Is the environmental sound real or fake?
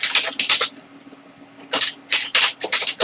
real